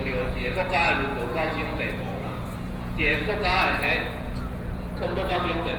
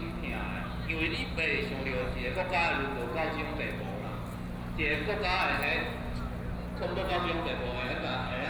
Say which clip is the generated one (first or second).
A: first